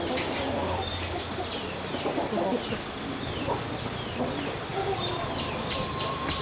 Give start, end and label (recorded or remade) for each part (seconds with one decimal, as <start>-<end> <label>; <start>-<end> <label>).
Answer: 0.0-6.4 recorded